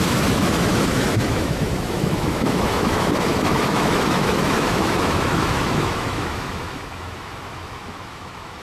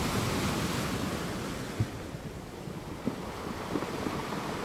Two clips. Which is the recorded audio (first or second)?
second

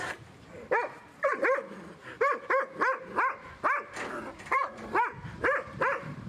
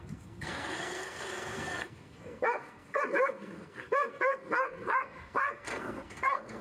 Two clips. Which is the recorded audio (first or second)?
first